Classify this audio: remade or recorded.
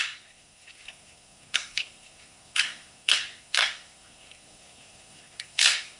remade